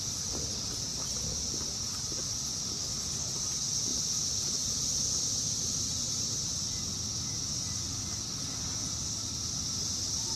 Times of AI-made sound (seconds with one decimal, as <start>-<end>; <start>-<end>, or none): 3.9-7.5